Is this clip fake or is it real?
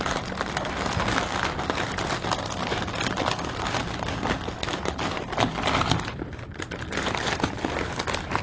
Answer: real